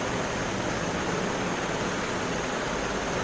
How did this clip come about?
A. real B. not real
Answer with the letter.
A